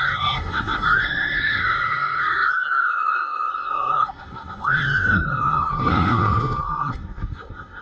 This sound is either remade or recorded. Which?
remade